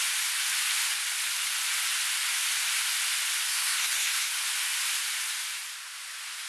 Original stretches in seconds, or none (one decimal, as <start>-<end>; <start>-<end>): 0.0-3.5; 4.3-6.5